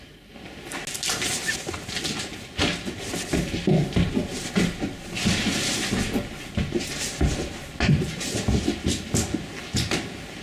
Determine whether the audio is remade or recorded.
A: recorded